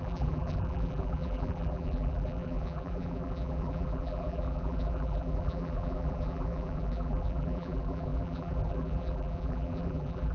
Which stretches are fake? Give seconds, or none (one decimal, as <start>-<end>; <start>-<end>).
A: 0.0-10.3